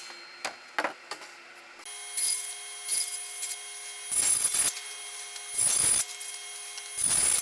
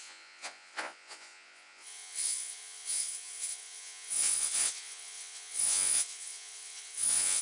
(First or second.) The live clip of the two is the first